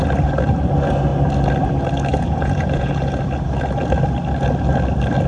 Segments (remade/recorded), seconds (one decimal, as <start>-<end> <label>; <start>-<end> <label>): 0.0-2.1 recorded; 2.1-3.2 remade; 3.2-5.3 recorded